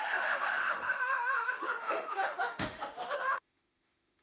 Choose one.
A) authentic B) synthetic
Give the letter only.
B